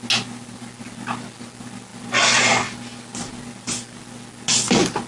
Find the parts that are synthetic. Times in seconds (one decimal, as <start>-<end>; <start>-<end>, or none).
none